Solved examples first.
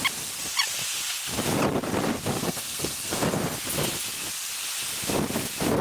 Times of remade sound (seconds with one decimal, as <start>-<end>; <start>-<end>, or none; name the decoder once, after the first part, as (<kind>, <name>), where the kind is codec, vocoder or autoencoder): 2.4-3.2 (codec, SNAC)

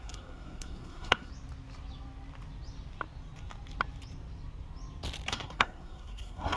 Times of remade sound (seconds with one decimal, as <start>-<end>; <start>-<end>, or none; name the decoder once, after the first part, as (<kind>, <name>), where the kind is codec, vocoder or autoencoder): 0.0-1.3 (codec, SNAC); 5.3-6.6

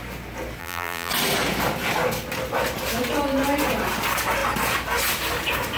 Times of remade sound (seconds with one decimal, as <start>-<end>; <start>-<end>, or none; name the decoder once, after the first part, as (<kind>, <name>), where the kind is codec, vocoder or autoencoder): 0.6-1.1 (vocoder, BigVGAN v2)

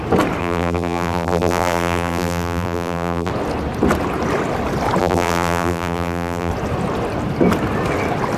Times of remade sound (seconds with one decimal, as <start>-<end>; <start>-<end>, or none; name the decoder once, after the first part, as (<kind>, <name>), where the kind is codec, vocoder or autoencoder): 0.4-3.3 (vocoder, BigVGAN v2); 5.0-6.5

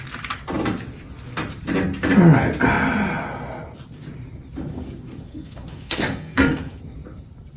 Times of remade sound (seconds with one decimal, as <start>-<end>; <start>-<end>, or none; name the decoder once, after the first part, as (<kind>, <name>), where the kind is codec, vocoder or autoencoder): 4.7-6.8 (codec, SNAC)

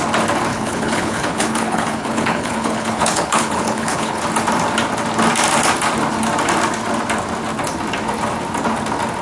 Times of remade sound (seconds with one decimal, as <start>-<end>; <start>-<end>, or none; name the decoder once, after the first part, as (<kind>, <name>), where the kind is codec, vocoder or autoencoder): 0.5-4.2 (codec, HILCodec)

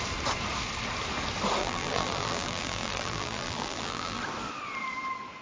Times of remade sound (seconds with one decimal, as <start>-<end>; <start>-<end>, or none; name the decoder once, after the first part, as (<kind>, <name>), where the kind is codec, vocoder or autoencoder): 1.6-4.2 (vocoder, BigVGAN v2)